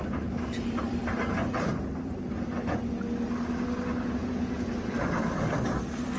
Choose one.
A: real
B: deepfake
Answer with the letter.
A